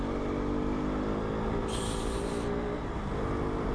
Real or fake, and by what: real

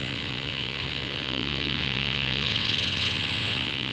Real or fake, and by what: fake, vocoder, WaveNeXt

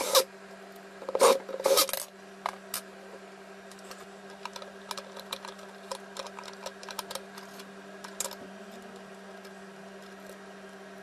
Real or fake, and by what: real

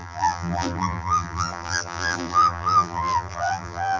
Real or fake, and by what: fake, vocoder, BigVGAN v2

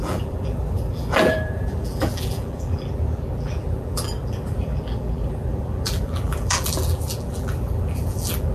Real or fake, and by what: fake, vocoder, BigVGAN v2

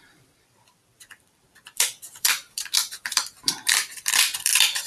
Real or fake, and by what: fake, vocoder, BigVGAN v2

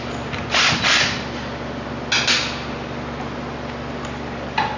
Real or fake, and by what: real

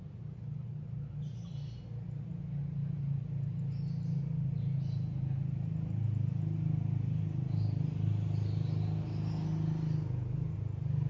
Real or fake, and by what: real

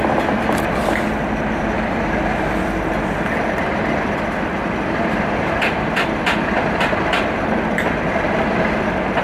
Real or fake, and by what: fake, vocoder, BigVGAN v2